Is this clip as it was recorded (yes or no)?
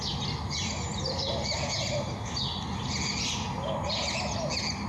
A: yes